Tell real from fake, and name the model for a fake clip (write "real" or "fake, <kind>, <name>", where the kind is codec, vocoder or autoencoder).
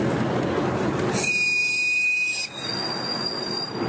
real